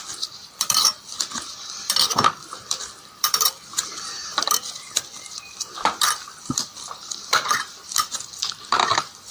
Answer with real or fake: fake